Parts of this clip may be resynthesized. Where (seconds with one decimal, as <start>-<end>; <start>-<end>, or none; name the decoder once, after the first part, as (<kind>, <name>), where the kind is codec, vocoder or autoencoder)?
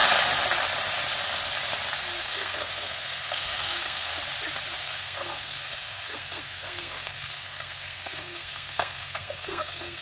2.2-4.1 (codec, SNAC); 4.8-10.0